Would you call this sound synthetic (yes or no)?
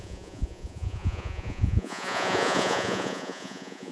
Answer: yes